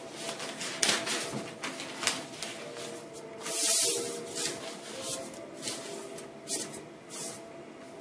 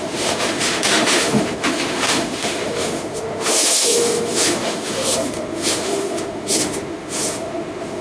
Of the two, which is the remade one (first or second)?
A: second